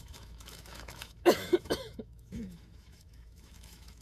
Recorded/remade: remade